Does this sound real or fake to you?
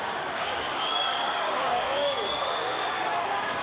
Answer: fake